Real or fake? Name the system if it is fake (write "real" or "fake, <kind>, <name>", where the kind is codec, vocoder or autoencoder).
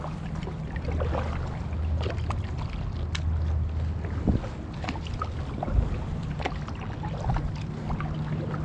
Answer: real